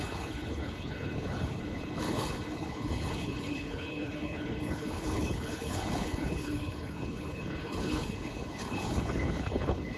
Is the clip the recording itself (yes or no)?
no